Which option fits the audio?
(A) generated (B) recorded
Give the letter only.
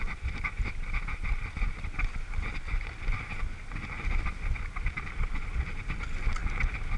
B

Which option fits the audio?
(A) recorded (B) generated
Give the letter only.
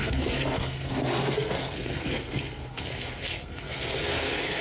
B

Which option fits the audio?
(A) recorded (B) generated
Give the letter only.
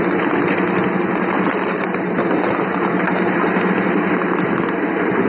A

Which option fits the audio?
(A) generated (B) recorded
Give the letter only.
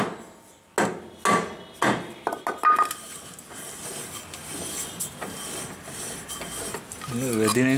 B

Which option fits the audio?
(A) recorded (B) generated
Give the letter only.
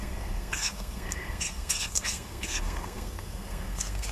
B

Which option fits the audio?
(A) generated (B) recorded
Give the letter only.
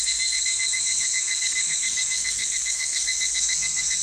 A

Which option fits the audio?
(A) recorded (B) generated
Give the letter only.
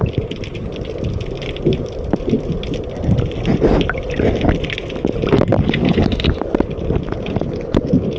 A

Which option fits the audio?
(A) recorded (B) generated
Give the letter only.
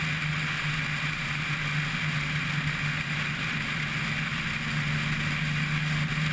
A